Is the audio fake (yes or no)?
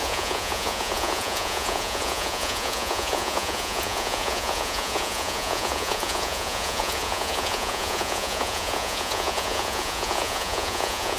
yes